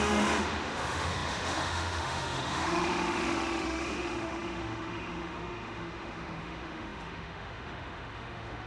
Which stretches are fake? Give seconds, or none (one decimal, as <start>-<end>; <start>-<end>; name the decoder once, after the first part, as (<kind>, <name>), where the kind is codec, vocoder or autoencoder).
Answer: 0.0-8.7 (autoencoder, DAC-VAE)